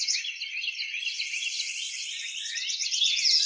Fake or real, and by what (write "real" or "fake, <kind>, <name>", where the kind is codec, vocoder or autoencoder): real